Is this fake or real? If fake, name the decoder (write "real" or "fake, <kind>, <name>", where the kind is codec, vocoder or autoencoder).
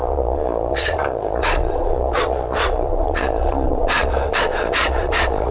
fake, vocoder, Vocos